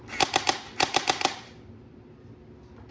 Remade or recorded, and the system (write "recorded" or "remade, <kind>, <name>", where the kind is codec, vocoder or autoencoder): recorded